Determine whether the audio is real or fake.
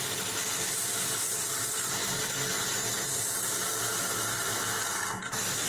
real